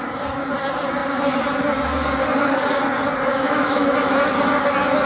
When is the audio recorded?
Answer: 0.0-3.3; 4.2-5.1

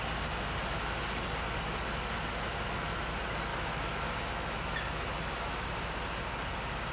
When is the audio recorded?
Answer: 0.0-3.5; 5.7-6.9